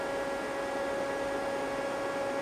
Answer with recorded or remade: recorded